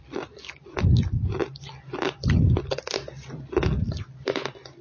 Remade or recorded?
recorded